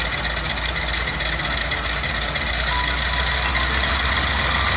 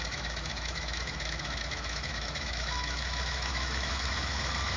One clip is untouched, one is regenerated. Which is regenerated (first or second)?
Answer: second